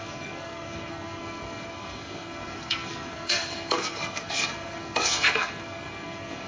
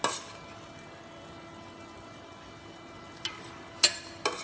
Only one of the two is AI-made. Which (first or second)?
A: first